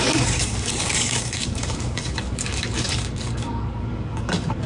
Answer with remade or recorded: remade